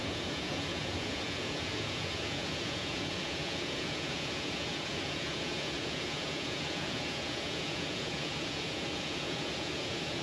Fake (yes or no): yes